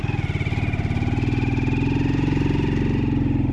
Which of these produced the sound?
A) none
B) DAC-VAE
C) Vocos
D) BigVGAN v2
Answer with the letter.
A